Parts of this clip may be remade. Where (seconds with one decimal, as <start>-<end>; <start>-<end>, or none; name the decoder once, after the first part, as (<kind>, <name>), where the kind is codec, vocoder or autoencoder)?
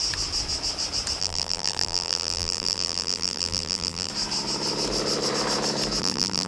1.2-4.1 (vocoder, BigVGAN v2); 6.0-6.5